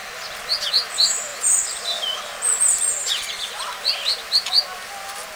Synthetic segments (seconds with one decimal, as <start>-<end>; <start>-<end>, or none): none